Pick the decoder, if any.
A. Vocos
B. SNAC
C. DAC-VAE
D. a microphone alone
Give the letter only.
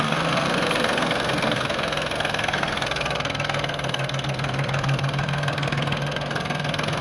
B